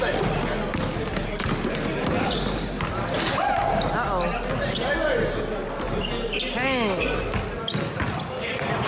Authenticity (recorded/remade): recorded